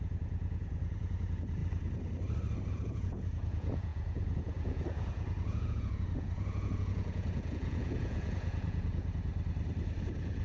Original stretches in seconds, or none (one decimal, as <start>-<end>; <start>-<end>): 1.6-2.7; 9.3-10.0